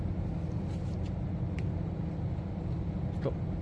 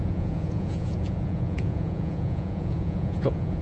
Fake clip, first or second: second